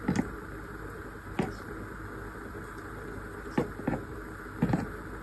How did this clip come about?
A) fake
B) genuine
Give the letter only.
B